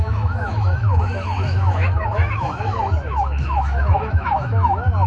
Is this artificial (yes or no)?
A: yes